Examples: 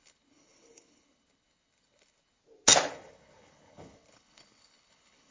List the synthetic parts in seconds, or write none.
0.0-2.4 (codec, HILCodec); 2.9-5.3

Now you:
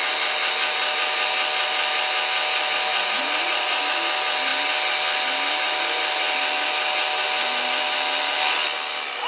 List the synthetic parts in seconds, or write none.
2.9-3.8 (vocoder, Vocos)

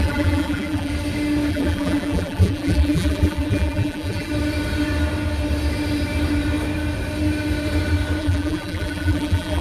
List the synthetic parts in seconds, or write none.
0.0-0.9 (vocoder, BigVGAN v2); 1.5-4.3; 8.2-9.6

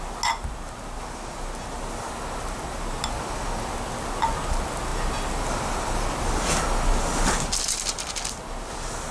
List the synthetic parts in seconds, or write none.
none

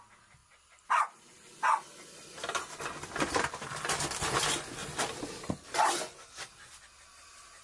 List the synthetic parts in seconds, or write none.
none

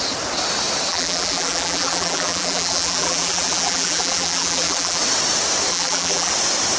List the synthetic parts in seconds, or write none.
0.9-5.0 (vocoder, BigVGAN v2); 5.7-6.3